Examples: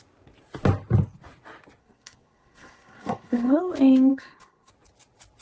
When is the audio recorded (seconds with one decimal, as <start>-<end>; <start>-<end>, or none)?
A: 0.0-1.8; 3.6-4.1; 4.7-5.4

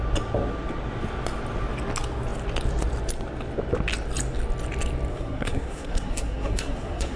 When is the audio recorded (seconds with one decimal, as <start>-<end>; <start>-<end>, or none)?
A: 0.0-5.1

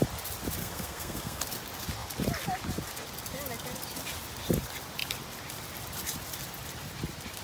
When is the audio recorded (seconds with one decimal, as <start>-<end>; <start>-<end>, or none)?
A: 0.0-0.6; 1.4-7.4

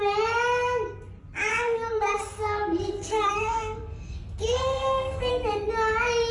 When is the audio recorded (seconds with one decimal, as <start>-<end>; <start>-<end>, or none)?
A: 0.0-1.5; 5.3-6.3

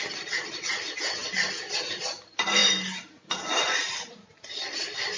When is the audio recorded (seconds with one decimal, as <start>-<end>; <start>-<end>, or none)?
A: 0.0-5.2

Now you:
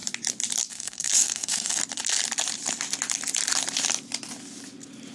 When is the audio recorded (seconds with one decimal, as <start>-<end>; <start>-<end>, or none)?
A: 0.0-0.7; 1.8-5.1